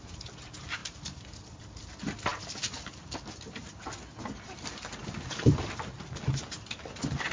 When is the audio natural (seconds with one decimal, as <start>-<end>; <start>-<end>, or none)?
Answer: 0.0-0.8; 1.6-7.3